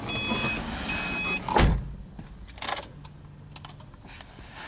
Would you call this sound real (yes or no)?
yes